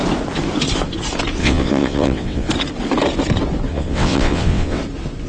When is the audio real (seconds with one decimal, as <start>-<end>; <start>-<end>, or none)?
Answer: 0.0-1.4; 2.5-3.7; 4.8-5.3